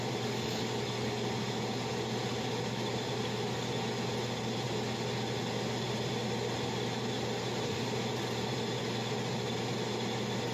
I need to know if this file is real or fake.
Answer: real